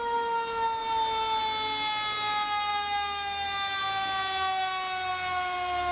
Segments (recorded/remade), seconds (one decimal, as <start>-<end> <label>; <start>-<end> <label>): 0.0-5.9 recorded